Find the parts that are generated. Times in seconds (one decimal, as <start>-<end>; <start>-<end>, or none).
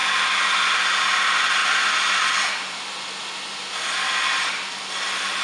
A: none